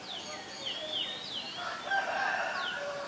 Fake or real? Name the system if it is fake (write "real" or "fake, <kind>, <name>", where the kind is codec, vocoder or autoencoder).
real